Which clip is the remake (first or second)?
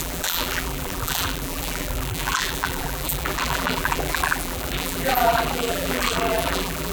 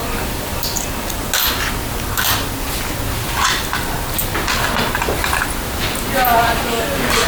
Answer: first